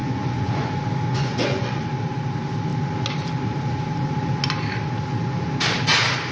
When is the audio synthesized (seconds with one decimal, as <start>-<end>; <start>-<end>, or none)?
0.0-0.7; 1.1-1.8